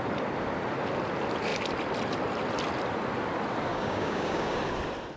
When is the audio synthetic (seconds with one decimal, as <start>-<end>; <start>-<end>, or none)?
3.7-4.6